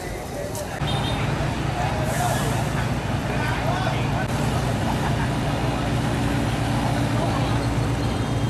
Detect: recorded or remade recorded